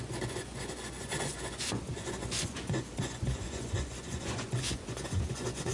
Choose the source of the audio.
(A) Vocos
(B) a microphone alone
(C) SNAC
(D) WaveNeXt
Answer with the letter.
A